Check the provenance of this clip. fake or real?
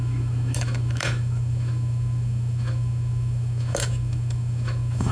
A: fake